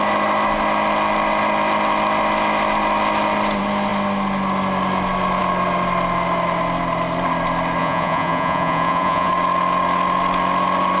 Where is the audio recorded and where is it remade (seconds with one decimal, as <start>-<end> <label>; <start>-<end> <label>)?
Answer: 0.0-7.8 recorded; 7.8-9.3 remade; 9.3-11.0 recorded